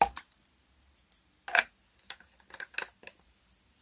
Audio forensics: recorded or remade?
recorded